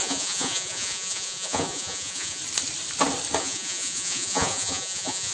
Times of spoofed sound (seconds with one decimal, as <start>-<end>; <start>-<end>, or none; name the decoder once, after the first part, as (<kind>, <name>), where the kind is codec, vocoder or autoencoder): 0.0-2.4 (vocoder, Vocos); 3.4-5.3